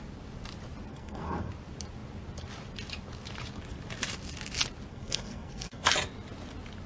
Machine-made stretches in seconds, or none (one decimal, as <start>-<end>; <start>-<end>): 0.9-1.5; 4.9-5.9